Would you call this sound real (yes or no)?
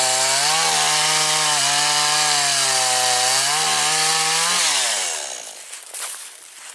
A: yes